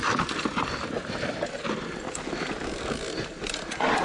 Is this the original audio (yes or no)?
yes